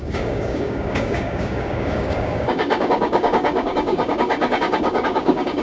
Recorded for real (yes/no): no